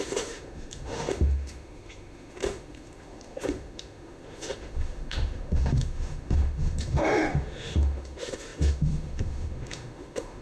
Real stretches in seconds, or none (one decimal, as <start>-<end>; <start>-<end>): none